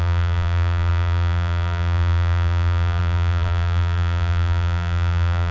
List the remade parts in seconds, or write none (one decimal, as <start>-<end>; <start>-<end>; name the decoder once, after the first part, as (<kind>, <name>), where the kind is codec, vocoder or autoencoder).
0.0-5.5 (vocoder, BigVGAN v2)